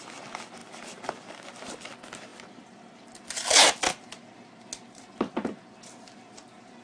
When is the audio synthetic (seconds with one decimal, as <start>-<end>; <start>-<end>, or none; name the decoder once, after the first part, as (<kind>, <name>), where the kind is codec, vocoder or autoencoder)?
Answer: none